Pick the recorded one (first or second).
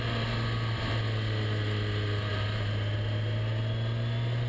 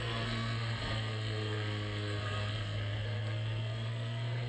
first